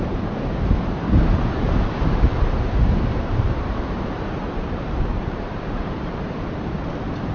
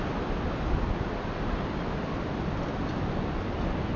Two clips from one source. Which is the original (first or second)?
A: second